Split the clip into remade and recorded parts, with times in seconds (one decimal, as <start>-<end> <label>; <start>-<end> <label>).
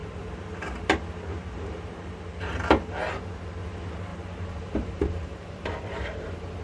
0.0-4.1 recorded; 4.1-6.6 remade